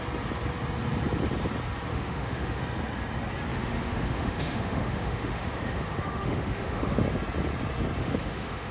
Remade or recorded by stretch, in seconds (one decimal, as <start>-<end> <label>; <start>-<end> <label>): 0.0-1.9 recorded; 1.9-2.6 remade; 2.6-3.5 recorded; 3.5-7.0 remade; 7.0-8.0 recorded; 8.0-8.7 remade